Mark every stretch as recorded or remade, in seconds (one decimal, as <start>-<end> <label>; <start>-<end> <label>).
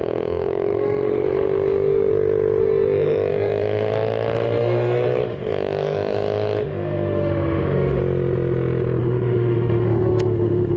0.0-2.1 remade; 2.1-2.6 recorded; 2.6-8.0 remade; 8.0-9.0 recorded; 9.0-10.8 remade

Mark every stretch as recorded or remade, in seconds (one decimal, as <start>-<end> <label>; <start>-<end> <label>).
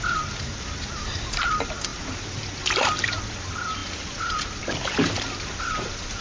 0.0-6.2 recorded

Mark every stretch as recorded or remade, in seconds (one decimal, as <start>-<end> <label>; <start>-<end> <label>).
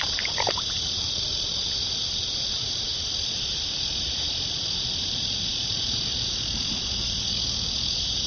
0.0-8.3 remade